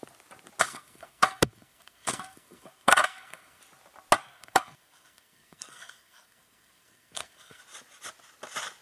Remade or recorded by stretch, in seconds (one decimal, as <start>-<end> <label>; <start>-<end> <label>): 0.0-0.6 recorded; 0.6-3.6 remade; 3.6-4.2 recorded; 4.2-7.6 remade; 7.6-8.8 recorded